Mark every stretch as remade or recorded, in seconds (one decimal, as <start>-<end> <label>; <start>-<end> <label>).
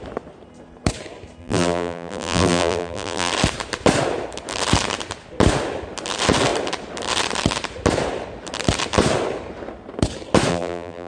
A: 0.0-1.4 recorded; 1.4-3.3 remade; 3.3-10.5 recorded; 10.5-11.1 remade